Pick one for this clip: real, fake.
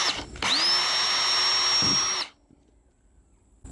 real